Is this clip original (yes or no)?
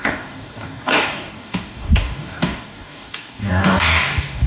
no